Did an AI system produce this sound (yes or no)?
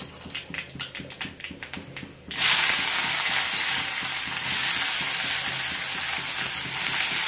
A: no